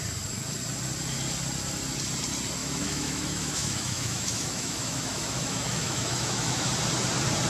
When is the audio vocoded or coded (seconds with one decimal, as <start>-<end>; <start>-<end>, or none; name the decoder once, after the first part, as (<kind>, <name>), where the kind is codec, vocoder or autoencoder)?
2.6-6.7 (autoencoder, DAC-VAE)